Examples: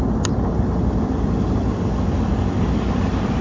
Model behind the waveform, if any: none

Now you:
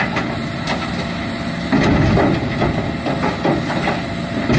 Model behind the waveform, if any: none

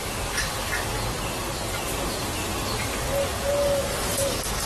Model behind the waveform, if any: none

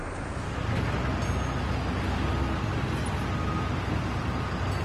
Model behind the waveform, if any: none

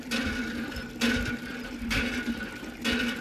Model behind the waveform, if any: none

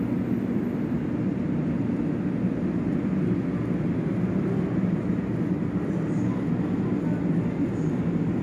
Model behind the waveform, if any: none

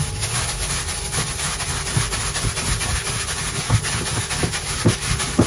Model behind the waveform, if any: none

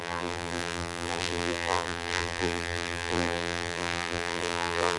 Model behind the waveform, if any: vocoder, BigVGAN v2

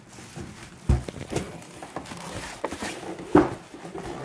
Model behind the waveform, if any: none